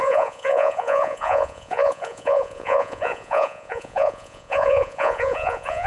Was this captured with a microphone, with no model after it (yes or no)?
no